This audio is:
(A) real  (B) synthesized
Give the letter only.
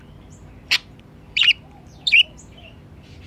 B